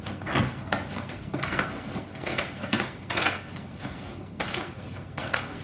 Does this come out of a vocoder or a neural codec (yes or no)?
yes